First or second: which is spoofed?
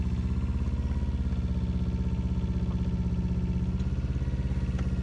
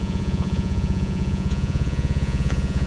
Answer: second